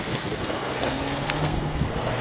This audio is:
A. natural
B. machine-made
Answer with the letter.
B